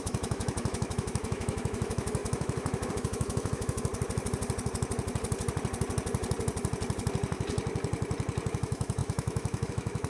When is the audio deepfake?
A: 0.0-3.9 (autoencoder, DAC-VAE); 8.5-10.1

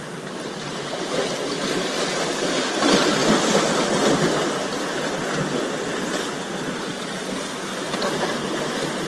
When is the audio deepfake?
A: none

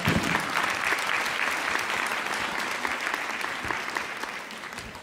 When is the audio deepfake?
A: none

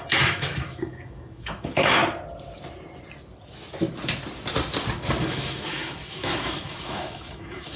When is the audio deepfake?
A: 0.0-2.0 (autoencoder, DAC-VAE); 5.2-7.8